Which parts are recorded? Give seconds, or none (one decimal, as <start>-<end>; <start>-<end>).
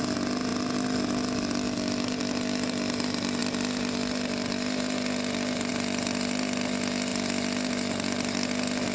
0.0-8.9